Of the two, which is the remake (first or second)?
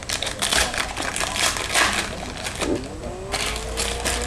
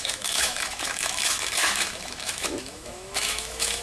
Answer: second